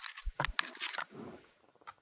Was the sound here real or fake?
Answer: real